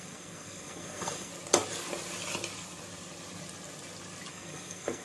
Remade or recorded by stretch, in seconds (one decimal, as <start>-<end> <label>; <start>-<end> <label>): 0.0-1.3 remade; 1.3-4.3 recorded; 4.3-5.0 remade